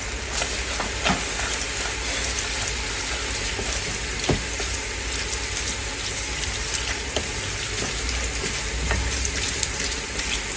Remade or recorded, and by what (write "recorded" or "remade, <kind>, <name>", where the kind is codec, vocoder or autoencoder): recorded